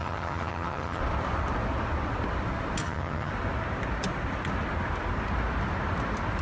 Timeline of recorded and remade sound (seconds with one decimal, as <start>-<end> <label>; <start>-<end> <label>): 0.0-1.0 remade; 1.0-2.8 recorded; 2.8-3.3 remade; 3.3-6.4 recorded